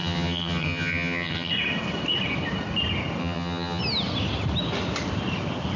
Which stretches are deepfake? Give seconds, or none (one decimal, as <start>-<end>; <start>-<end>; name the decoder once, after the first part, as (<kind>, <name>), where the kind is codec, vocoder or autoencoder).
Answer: 0.0-1.5 (vocoder, HiFi-GAN); 3.2-3.8

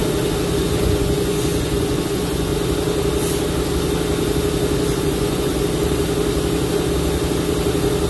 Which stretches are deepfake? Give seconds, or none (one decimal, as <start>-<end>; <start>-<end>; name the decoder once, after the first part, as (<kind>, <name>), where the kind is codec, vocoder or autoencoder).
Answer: 0.6-2.5 (vocoder, Vocos); 5.0-5.5

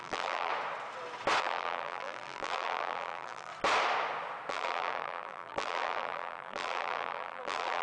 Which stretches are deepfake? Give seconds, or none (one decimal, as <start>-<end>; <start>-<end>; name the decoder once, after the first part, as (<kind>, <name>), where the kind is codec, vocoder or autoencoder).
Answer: 0.0-0.5 (vocoder, BigVGAN v2); 1.4-3.5; 4.5-7.8

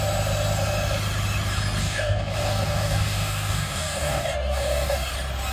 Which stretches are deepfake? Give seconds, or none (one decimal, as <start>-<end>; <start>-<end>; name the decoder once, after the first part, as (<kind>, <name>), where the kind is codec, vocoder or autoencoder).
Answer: 1.8-5.1 (codec, DAC)

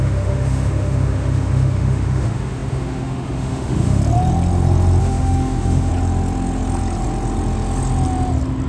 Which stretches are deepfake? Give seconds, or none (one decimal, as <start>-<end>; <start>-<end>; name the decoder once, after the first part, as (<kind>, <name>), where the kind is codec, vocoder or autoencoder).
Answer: 0.0-4.0 (autoencoder, DAC-VAE); 5.0-5.9

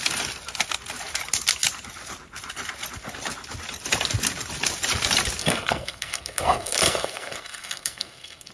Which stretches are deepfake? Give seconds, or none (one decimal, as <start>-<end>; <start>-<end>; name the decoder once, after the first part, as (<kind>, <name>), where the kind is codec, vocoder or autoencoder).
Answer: 5.4-8.5 (codec, SNAC)